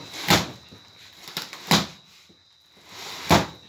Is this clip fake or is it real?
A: real